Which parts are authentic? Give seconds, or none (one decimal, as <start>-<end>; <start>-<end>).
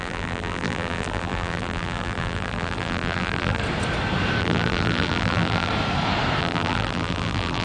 3.6-4.4; 5.7-6.4